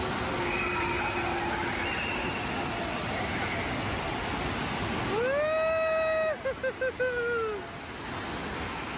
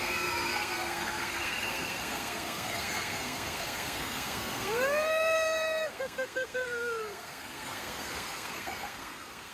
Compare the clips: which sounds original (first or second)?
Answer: first